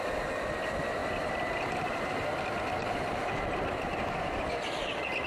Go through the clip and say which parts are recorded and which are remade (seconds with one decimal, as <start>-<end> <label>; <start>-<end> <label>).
0.0-1.0 recorded; 1.0-4.2 remade; 4.2-5.3 recorded